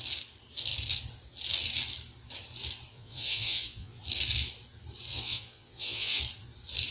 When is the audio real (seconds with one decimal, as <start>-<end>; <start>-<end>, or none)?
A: 0.0-2.9; 4.0-5.1; 6.2-6.9